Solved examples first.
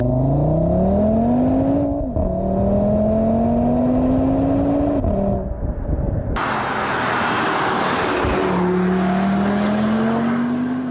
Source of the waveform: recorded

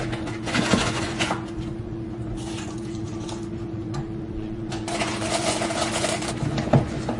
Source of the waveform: remade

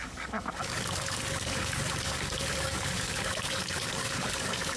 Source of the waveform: remade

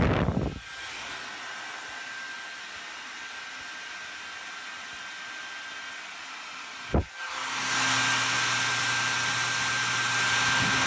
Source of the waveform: recorded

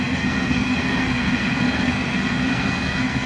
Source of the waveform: remade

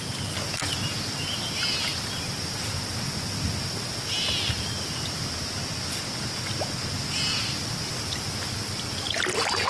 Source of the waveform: recorded